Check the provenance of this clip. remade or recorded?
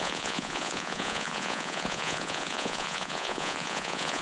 remade